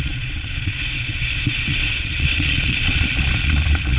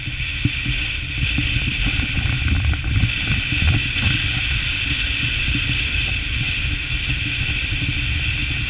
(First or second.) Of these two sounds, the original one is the second